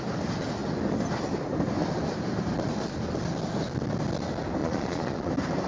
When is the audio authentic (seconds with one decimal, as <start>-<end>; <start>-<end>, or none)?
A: 0.0-4.6; 5.3-5.7